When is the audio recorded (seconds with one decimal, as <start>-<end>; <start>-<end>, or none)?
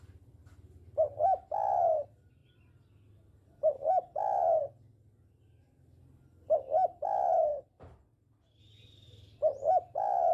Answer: 0.0-10.3